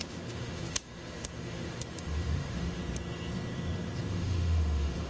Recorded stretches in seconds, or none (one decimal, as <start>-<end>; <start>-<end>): 2.8-4.1